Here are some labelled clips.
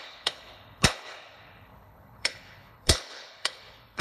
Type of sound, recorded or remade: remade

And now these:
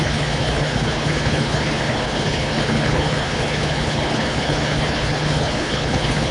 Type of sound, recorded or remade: remade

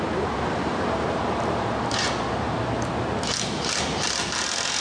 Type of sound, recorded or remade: recorded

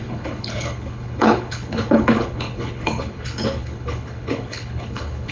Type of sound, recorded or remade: remade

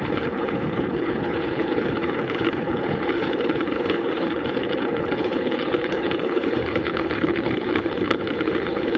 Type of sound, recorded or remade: remade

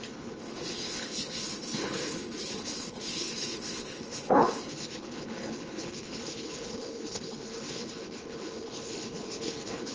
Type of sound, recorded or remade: remade